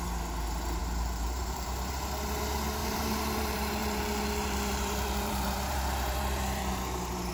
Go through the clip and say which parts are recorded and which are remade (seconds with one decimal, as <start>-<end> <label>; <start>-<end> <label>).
0.0-0.8 recorded; 0.8-1.9 remade; 1.9-2.8 recorded; 2.8-7.3 remade